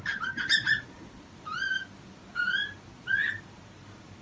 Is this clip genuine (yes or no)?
yes